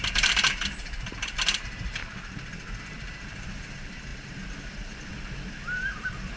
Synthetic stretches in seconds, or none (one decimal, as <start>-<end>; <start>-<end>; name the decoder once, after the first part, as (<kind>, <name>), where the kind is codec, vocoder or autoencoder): 0.0-2.0 (vocoder, BigVGAN v2); 2.8-6.4